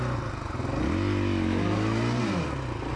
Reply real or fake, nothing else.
real